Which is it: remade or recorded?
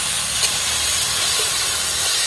recorded